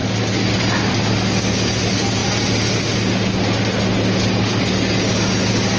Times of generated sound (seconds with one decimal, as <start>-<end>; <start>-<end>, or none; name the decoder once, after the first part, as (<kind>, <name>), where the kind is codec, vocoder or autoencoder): none